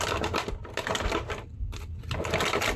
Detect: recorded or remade recorded